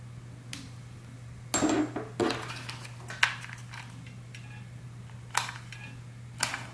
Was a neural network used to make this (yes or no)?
no